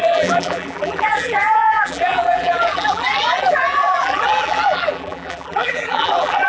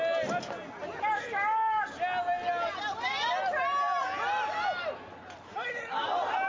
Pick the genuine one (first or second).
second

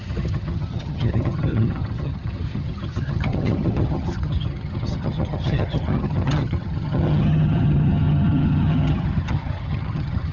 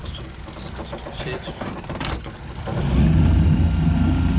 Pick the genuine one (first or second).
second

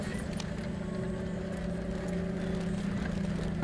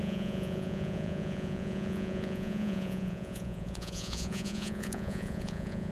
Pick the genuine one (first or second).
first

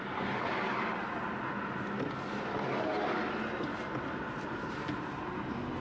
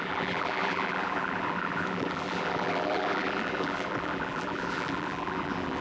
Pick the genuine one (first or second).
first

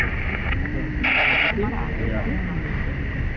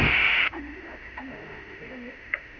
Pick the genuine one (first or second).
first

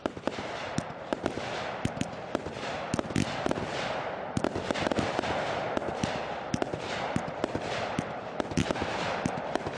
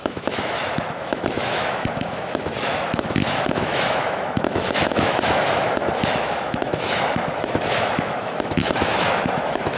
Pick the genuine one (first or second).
first